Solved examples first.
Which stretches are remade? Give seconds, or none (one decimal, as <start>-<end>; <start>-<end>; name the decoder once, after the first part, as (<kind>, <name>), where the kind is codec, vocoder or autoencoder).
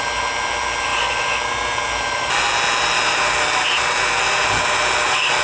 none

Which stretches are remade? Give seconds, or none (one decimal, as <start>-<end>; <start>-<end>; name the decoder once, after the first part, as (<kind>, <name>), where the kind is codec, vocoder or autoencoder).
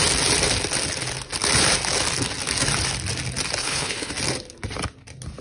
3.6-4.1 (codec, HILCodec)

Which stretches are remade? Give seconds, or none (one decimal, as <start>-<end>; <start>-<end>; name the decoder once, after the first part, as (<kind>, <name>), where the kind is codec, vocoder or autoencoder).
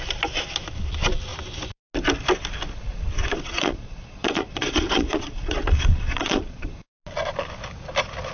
3.2-6.4 (vocoder, Vocos)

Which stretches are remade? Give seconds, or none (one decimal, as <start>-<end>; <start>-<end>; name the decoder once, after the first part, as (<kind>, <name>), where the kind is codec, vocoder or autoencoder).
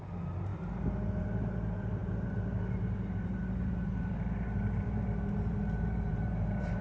0.0-0.5 (vocoder, BigVGAN v2); 1.2-6.8